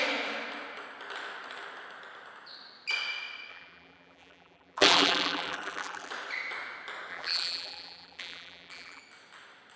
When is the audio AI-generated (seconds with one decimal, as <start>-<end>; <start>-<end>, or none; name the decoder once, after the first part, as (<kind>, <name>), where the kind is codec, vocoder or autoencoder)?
3.5-6.1 (vocoder, BigVGAN v2); 7.1-9.0